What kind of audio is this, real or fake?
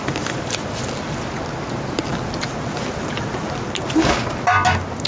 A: real